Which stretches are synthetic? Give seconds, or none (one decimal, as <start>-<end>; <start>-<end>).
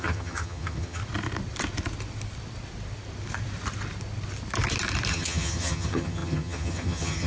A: 0.0-1.0; 5.1-7.3